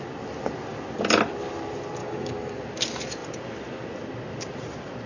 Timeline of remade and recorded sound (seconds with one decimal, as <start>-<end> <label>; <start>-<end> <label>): 0.0-2.0 recorded; 2.0-2.6 remade; 2.6-5.1 recorded